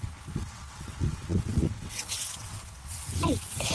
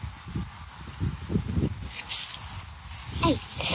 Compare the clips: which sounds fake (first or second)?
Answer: first